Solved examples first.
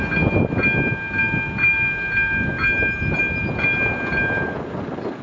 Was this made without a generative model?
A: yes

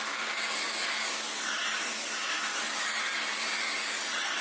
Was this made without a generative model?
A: no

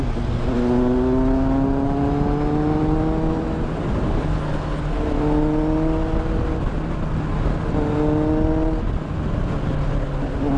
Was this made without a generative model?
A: yes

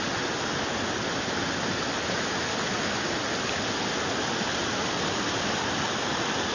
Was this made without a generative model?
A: yes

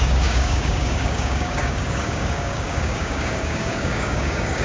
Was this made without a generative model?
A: no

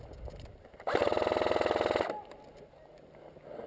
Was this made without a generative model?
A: yes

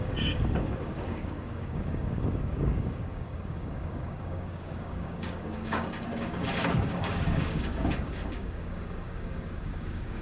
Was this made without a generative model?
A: no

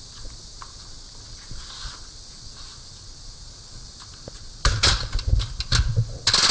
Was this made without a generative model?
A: yes